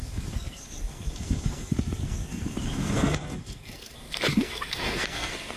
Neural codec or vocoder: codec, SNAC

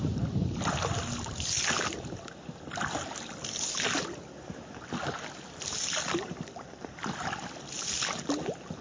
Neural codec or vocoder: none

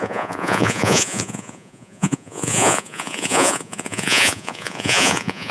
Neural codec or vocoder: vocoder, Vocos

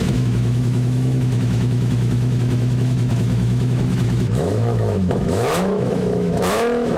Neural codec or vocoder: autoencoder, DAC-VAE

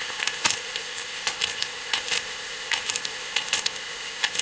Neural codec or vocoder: codec, ZipCodec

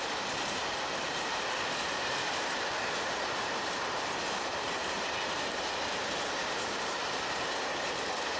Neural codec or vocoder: vocoder, BigVGAN v2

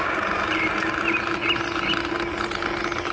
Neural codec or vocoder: none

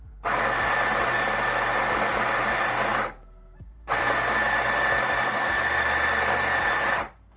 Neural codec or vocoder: none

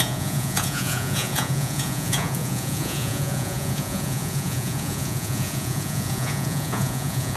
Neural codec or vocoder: vocoder, Vocos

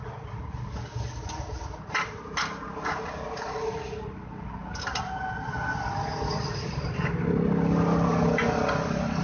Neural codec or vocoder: none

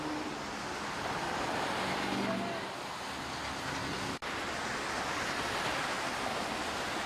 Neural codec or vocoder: none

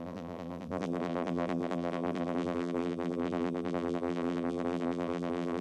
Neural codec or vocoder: vocoder, BigVGAN v2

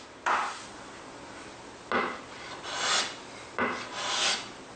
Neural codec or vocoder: none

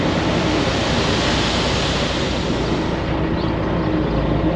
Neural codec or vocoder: none